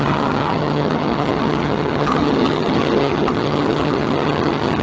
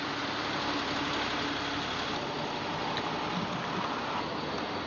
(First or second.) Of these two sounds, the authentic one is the second